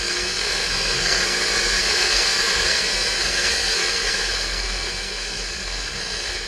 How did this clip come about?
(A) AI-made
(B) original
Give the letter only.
A